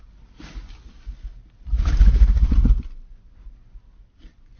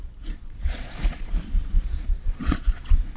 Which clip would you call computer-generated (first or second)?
second